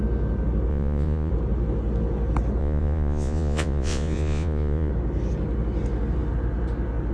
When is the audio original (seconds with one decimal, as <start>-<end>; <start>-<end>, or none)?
0.0-0.7; 1.3-2.6; 4.9-7.1